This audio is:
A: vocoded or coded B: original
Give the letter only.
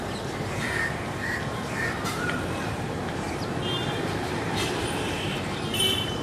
A